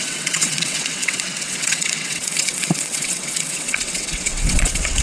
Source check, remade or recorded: remade